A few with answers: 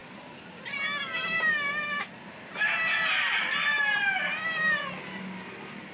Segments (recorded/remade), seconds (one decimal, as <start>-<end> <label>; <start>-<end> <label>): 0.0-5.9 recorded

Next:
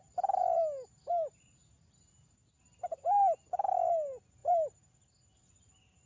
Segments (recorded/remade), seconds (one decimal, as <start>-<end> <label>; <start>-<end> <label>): 0.0-6.1 recorded

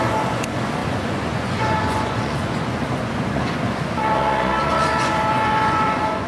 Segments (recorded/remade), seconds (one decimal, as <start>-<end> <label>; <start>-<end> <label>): 0.0-6.3 remade

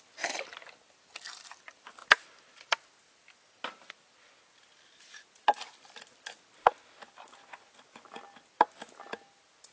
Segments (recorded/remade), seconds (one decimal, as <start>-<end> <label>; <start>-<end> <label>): 0.0-9.7 recorded

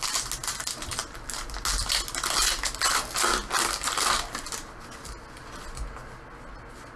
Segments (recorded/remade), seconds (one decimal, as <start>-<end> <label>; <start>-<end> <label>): 0.0-7.0 recorded